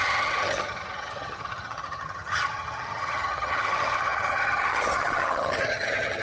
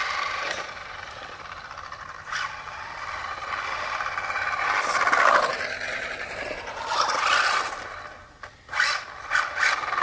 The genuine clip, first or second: second